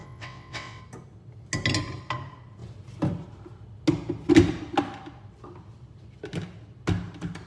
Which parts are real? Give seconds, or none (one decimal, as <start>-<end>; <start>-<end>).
0.8-7.5

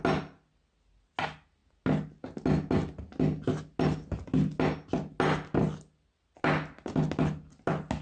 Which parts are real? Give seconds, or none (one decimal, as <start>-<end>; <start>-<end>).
0.0-8.0

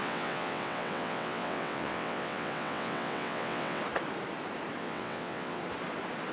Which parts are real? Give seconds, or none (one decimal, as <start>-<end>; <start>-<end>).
3.8-4.8; 5.6-6.3